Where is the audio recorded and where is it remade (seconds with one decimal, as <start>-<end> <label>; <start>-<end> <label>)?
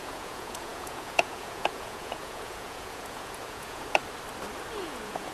0.0-4.0 remade; 4.0-4.8 recorded; 4.8-5.3 remade